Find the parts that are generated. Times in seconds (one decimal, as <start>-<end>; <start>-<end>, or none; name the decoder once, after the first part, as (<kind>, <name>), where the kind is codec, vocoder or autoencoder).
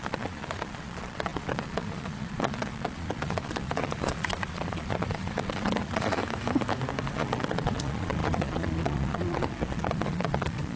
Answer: 0.0-6.2 (vocoder, Vocos); 7.0-10.8